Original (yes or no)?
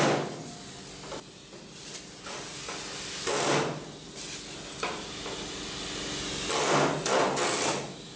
yes